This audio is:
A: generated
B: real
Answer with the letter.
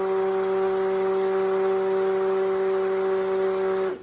B